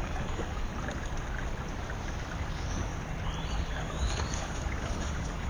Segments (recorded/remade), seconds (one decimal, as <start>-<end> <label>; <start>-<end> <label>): 0.0-0.7 remade; 0.7-2.5 recorded; 2.5-2.9 remade; 2.9-3.7 recorded; 3.7-5.5 remade